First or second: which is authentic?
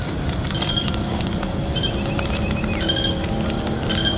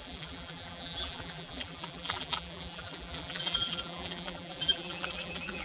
first